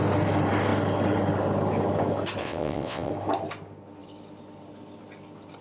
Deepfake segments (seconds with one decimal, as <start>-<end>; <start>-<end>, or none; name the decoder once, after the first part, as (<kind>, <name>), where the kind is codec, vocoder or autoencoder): 2.4-3.1 (vocoder, WaveNeXt)